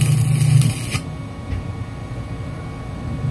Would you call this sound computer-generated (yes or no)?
no